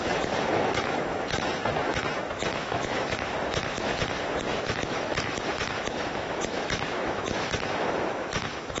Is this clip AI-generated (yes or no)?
yes